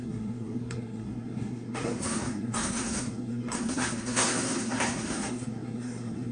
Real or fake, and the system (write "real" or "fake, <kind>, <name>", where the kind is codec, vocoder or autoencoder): fake, codec, SNAC